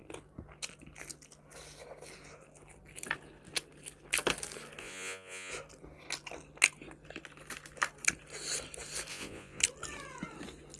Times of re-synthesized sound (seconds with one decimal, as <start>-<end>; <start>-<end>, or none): 4.8-5.5; 9.1-9.6